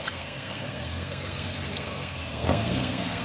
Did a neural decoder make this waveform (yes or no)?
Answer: yes